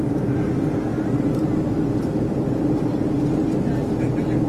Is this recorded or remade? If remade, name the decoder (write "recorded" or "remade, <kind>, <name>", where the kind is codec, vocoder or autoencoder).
recorded